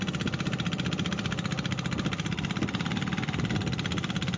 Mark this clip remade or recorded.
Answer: remade